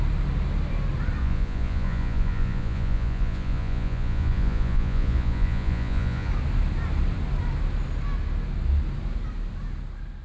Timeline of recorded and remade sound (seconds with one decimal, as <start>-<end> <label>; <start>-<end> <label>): 0.0-1.2 recorded; 1.2-6.3 remade; 6.3-10.2 recorded